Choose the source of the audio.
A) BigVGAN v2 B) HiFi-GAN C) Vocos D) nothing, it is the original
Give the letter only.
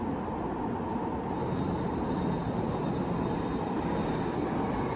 D